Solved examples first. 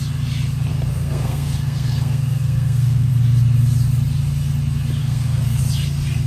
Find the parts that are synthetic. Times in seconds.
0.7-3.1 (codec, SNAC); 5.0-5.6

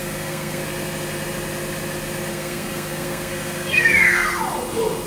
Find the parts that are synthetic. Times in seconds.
0.0-0.6 (codec, SNAC); 2.3-4.4

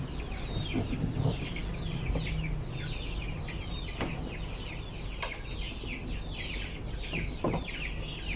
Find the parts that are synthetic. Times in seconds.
none

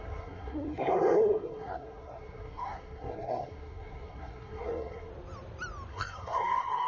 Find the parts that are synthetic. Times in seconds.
0.0-5.1 (codec, SNAC); 5.9-6.9

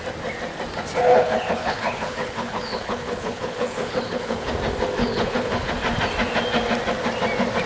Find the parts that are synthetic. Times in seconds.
1.0-4.5 (codec, HILCodec); 5.0-5.7

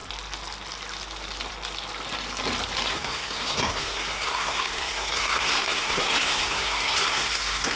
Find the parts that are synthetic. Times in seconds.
2.9-7.8 (codec, SNAC)

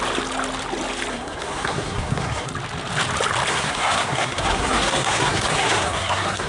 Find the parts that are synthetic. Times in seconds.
1.1-2.5 (codec, SNAC); 3.5-6.5

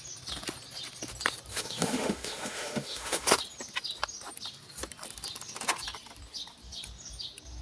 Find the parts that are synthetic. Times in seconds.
1.5-3.4 (autoencoder, DAC-VAE)